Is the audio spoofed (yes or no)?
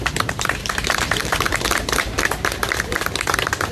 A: yes